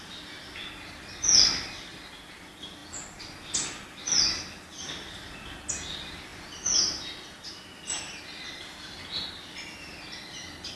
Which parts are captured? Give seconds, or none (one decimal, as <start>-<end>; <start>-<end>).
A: 0.0-10.8